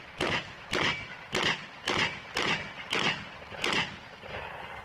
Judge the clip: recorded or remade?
recorded